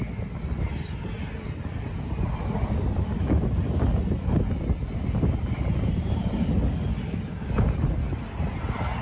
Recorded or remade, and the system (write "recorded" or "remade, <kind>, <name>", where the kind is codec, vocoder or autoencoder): recorded